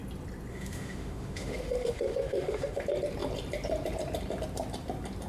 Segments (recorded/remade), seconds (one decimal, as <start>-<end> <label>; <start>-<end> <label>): 0.0-0.5 recorded; 0.5-2.8 remade; 2.8-5.3 recorded

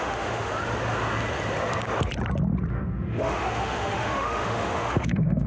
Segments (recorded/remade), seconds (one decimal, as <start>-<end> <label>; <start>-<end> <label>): 0.0-0.5 remade; 0.5-2.7 recorded; 2.7-5.5 remade

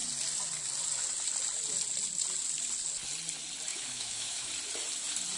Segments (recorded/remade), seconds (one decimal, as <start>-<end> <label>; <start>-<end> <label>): 0.0-3.7 recorded; 3.7-4.5 remade; 4.5-5.4 recorded

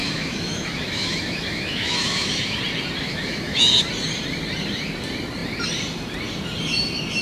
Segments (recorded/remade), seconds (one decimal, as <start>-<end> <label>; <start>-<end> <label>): 0.0-2.6 remade; 2.6-3.1 recorded; 3.1-3.6 remade; 3.6-7.2 recorded

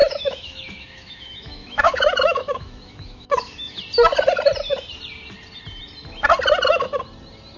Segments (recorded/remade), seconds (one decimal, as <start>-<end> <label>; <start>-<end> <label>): 0.0-3.8 remade; 3.8-7.6 recorded